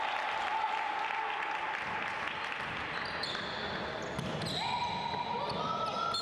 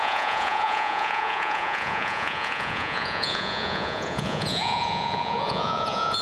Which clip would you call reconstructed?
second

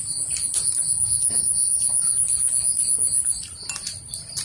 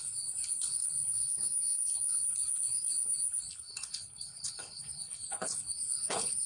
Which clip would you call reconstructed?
second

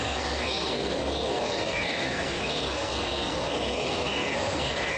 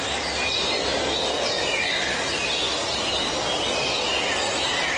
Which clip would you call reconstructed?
first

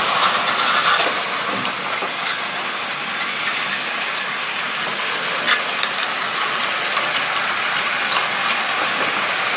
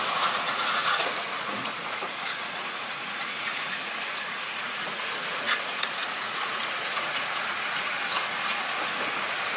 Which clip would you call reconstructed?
second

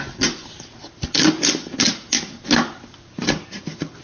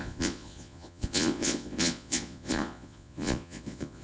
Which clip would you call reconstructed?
second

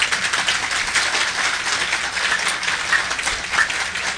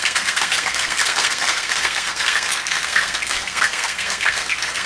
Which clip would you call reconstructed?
second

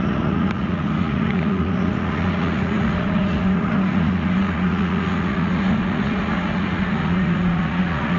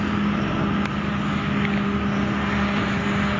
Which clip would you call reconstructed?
first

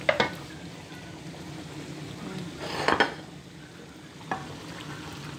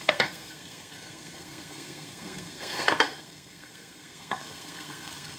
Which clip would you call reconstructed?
second